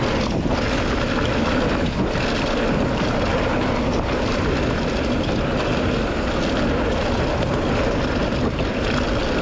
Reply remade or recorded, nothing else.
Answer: recorded